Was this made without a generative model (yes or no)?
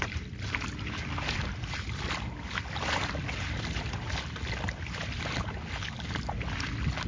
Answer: yes